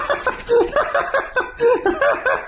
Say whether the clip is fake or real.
real